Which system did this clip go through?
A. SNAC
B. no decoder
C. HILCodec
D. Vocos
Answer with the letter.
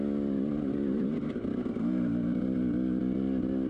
B